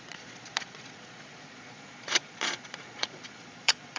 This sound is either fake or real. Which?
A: fake